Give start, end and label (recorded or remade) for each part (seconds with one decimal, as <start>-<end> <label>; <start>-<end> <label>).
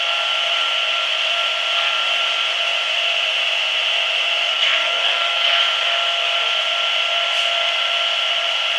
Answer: 0.0-4.4 recorded; 4.4-5.6 remade; 5.6-8.8 recorded